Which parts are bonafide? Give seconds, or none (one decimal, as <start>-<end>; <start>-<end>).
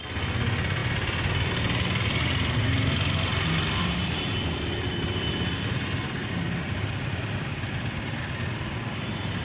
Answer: 0.0-9.4